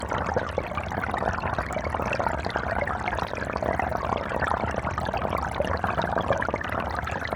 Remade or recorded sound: recorded